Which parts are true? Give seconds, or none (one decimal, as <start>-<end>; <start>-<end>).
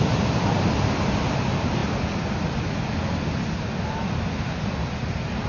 0.0-5.5